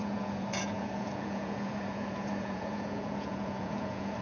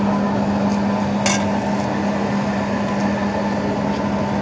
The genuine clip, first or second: second